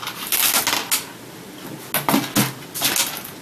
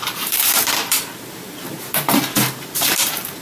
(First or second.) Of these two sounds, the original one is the first